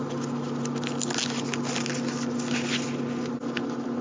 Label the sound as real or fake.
real